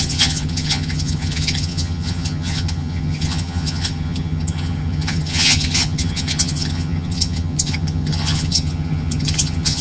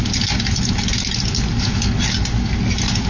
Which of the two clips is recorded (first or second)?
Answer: second